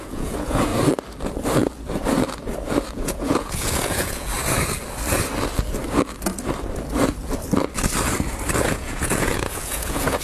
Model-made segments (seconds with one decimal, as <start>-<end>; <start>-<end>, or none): 0.0-0.7; 2.9-4.3; 8.6-10.2